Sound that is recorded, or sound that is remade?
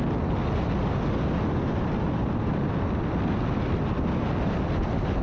recorded